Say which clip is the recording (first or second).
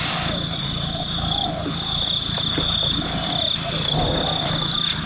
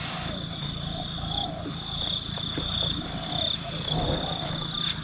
first